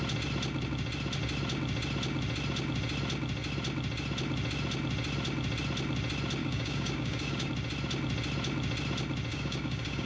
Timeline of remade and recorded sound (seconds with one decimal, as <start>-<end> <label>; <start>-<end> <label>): 0.0-6.4 recorded; 6.4-7.5 remade; 7.5-9.3 recorded; 9.3-10.1 remade